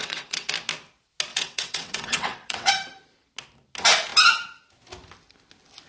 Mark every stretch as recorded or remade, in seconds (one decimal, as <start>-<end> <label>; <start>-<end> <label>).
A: 0.0-0.5 remade; 0.5-1.3 recorded; 1.3-2.7 remade; 2.7-5.9 recorded